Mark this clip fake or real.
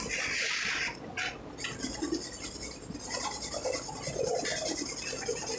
real